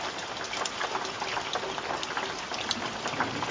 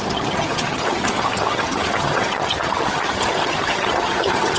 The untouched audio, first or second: first